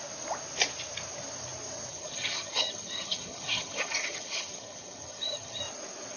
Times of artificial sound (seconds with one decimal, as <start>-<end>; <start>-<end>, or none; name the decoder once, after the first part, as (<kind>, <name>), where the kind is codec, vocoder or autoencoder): 1.9-5.6 (vocoder, HiFi-GAN)